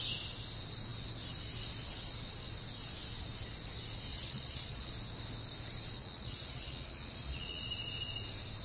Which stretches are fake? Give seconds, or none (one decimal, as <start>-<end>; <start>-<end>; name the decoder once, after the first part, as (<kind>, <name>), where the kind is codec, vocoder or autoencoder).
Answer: 4.1-4.9 (vocoder, Vocos); 6.0-7.6